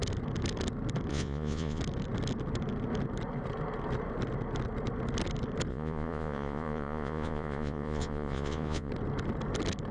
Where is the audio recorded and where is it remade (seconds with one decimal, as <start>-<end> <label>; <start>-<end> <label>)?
0.0-1.1 recorded; 1.1-1.8 remade; 1.8-5.7 recorded; 5.7-8.9 remade; 8.9-9.9 recorded